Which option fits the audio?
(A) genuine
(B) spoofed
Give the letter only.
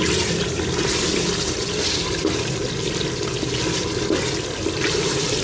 A